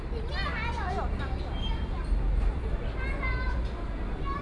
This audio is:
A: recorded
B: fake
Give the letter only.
A